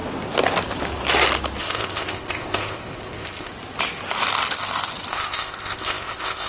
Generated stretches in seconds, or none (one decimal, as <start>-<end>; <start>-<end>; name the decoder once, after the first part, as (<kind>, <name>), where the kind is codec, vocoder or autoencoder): 1.6-3.5 (codec, ZipCodec); 5.1-6.5